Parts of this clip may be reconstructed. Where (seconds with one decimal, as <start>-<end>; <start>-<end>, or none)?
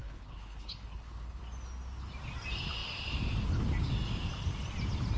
0.0-1.4